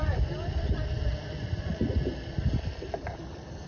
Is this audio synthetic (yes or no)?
yes